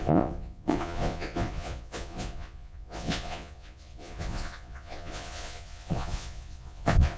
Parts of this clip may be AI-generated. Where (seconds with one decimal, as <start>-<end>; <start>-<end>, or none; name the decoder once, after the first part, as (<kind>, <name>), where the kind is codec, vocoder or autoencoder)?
0.0-7.2 (vocoder, Vocos)